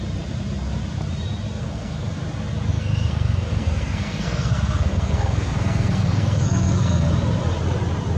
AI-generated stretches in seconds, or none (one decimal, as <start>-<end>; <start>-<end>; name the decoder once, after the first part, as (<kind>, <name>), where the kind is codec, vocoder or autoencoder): 1.6-2.1 (codec, SNAC); 2.7-7.1